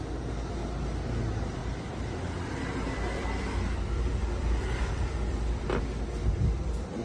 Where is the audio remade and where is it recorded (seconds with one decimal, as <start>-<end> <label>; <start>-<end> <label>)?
0.0-1.6 recorded; 1.6-5.8 remade; 5.8-6.2 recorded; 6.2-7.0 remade